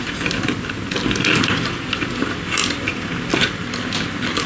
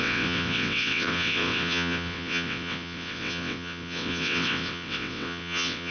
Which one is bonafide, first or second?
first